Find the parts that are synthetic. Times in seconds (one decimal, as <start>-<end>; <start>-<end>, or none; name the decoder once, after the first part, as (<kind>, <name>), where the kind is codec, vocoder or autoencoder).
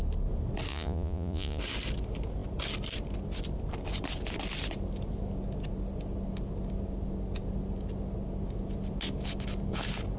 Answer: 0.7-1.6 (vocoder, Vocos)